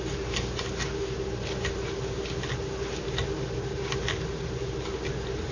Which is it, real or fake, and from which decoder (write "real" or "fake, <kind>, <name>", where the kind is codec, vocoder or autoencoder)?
real